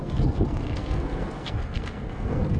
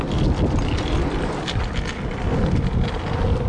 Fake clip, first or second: first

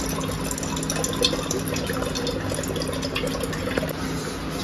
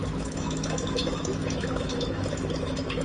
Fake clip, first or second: second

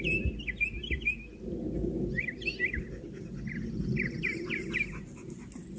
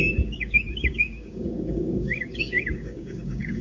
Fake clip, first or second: second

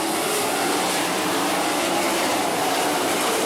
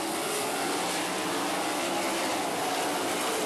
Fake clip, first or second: first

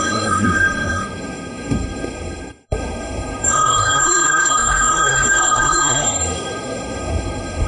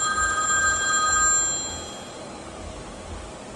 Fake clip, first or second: first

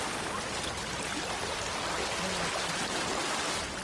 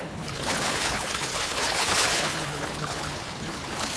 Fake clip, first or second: second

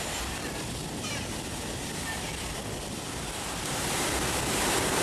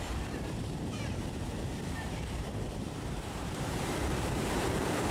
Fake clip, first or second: second